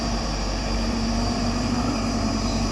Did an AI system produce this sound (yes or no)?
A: yes